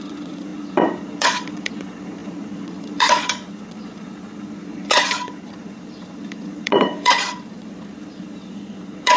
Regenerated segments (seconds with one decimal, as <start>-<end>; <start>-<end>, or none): 0.0-9.2